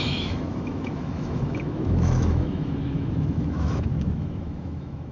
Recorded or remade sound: remade